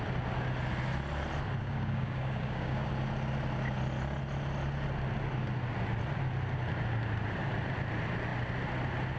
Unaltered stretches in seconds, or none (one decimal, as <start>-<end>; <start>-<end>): 0.0-1.6; 2.9-9.2